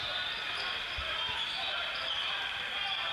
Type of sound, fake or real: real